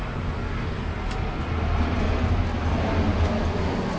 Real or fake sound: real